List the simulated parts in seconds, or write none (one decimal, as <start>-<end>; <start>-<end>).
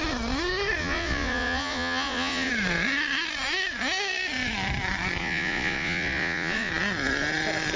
0.8-2.5; 5.2-6.7